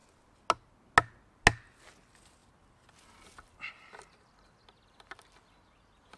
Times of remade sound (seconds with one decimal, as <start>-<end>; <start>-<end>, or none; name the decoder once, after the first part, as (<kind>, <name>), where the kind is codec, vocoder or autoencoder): none